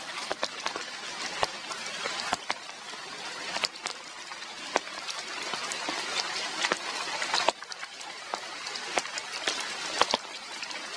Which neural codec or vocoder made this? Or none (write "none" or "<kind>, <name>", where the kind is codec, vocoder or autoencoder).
none